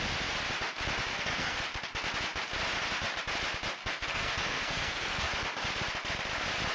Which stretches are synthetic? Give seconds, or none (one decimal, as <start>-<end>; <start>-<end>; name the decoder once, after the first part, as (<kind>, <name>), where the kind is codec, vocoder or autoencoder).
1.1-1.6 (codec, SNAC); 3.9-5.3